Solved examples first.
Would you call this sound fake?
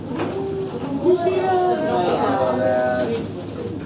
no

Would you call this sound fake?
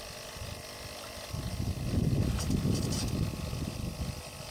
no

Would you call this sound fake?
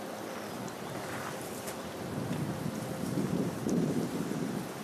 yes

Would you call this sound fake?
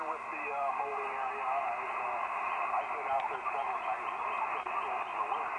no